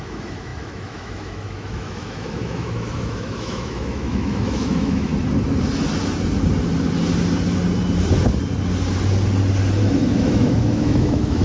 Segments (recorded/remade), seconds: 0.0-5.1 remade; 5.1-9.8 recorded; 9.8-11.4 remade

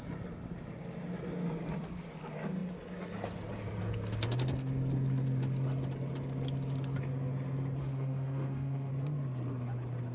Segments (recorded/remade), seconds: 0.0-7.8 recorded; 7.8-8.9 remade; 8.9-10.1 recorded